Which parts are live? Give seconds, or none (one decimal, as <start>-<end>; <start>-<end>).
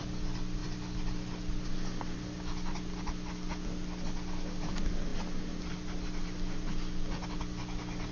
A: 0.0-8.1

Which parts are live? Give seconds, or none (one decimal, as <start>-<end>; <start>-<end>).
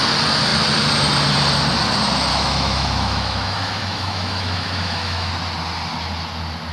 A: 0.0-2.3; 5.3-6.7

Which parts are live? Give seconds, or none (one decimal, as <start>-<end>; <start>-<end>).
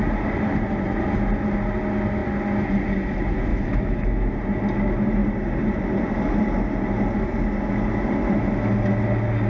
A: 0.0-3.5; 4.3-9.5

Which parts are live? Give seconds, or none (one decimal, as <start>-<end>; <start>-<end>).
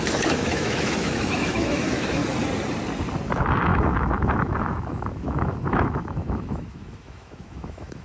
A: 2.2-3.3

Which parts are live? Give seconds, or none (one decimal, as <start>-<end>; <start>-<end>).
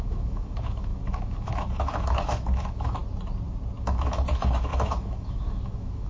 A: 3.0-3.8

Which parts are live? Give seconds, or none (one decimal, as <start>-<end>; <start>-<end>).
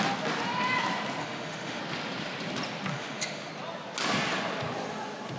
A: 0.0-1.2; 1.8-2.9; 3.5-5.4